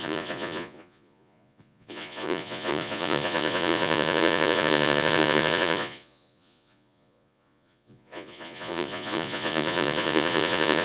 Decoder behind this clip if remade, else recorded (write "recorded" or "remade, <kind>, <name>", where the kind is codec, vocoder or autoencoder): remade, vocoder, Vocos